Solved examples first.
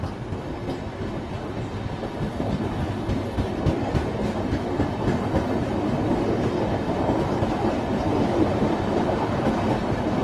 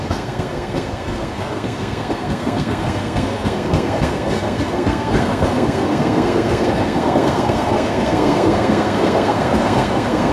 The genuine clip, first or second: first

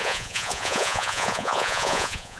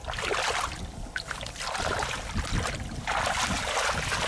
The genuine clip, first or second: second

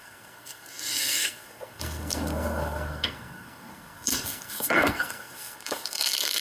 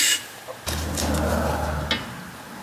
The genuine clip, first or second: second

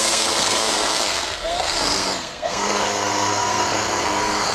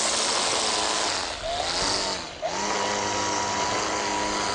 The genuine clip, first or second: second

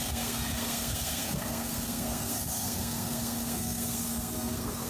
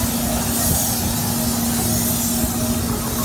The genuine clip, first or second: second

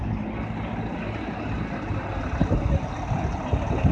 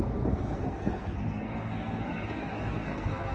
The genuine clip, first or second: first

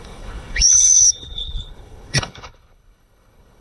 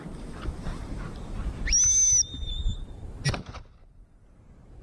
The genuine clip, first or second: second